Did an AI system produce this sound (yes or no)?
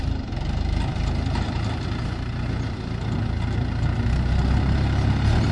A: no